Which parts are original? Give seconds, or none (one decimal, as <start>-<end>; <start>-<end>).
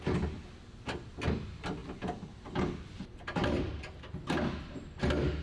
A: 0.0-5.4